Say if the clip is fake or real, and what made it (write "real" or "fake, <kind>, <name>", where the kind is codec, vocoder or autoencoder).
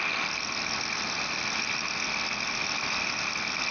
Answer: real